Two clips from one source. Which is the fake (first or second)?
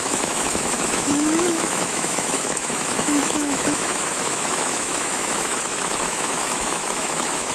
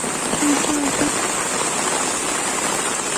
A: first